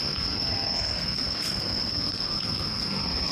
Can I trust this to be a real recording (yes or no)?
no